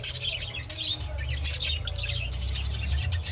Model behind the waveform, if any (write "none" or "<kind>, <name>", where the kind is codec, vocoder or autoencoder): none